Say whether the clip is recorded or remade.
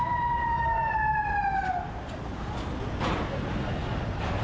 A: recorded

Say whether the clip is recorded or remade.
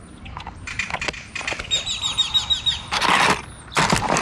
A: recorded